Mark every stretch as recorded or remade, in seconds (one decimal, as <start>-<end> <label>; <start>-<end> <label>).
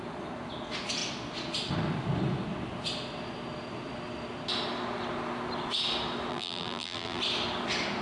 0.0-6.3 recorded; 6.3-7.2 remade; 7.2-8.0 recorded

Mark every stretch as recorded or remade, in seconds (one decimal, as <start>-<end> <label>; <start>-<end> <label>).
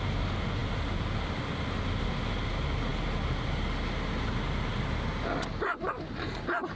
0.0-0.6 recorded; 0.6-2.1 remade; 2.1-6.8 recorded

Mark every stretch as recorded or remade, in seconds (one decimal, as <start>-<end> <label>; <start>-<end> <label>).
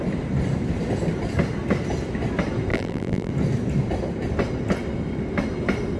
0.0-2.7 recorded; 2.7-3.3 remade; 3.3-6.0 recorded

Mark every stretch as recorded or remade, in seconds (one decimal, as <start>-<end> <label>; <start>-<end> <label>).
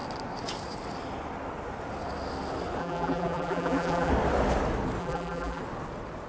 0.0-2.8 recorded; 2.8-4.1 remade; 4.1-5.0 recorded; 5.0-5.6 remade; 5.6-6.3 recorded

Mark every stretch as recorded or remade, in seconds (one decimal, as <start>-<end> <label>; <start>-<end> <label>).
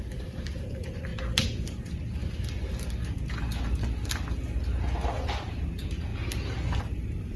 0.0-1.1 remade; 1.1-5.5 recorded; 5.5-6.1 remade; 6.1-6.8 recorded; 6.8-7.4 remade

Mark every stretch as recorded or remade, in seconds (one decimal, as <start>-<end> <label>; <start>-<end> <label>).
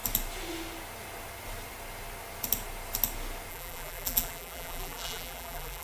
0.0-3.5 recorded; 3.5-5.8 remade